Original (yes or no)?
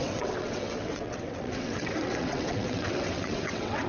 no